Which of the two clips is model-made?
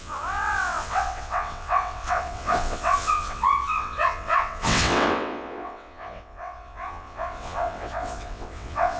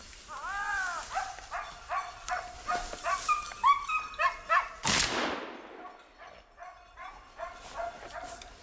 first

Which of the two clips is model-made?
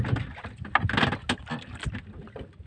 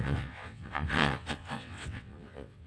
second